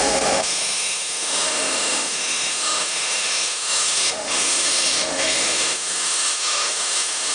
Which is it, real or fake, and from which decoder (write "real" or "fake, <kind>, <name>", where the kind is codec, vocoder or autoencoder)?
fake, autoencoder, DAC-VAE